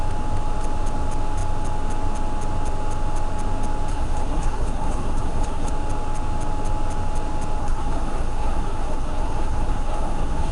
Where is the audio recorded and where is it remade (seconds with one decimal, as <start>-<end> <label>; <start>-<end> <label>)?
0.0-3.9 recorded; 3.9-5.7 remade; 5.7-7.6 recorded; 7.6-10.5 remade